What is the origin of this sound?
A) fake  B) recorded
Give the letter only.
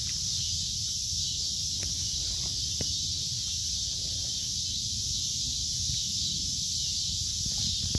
A